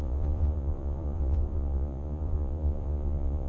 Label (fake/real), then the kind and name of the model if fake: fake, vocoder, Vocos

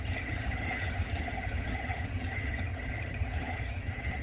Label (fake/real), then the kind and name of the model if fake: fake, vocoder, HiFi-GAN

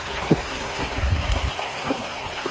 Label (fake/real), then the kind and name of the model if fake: fake, codec, SNAC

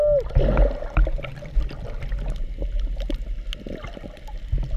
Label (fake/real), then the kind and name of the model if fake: real